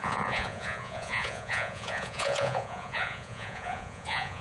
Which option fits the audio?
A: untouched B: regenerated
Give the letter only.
B